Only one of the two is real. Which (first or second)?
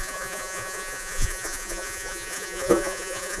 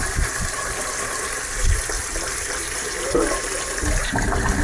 second